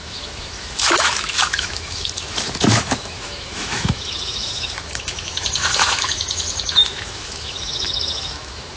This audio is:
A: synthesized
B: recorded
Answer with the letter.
A